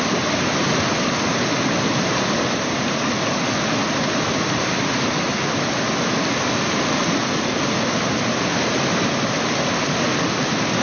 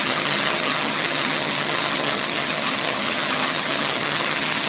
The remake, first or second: second